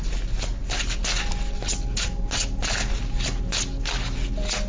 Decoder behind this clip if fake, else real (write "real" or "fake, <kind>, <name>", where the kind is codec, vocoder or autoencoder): real